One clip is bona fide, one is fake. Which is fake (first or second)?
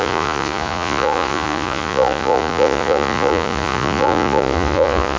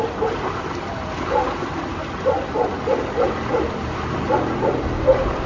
first